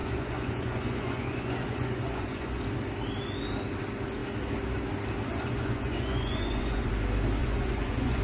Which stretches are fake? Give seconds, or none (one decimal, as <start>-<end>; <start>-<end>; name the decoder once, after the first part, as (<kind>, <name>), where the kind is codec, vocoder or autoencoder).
0.0-2.6 (vocoder, Vocos); 5.3-6.9; 7.4-8.2